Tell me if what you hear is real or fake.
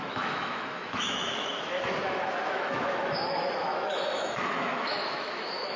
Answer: fake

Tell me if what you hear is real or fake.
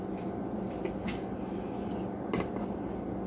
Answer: real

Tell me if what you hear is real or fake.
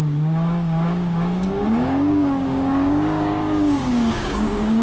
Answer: fake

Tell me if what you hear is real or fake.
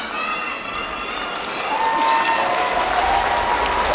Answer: real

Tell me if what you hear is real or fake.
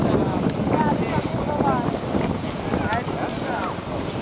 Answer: real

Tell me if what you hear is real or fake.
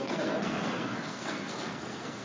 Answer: fake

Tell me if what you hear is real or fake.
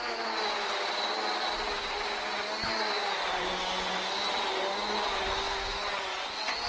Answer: real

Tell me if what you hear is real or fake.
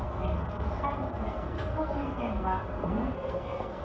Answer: fake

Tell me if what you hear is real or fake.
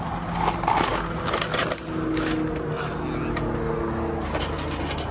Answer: real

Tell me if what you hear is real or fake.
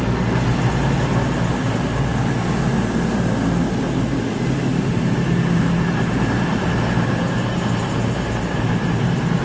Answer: real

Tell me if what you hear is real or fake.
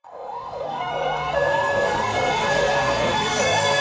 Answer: fake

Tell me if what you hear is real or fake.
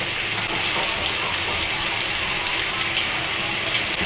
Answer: real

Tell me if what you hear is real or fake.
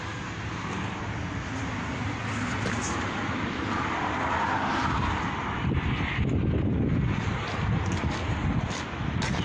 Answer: real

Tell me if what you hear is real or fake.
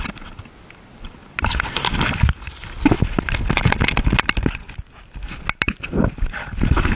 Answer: real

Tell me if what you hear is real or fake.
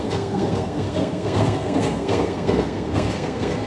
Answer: fake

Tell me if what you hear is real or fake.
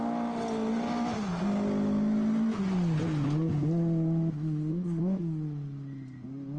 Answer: real